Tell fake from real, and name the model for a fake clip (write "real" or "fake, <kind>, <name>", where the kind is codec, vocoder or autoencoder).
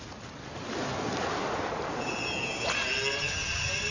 real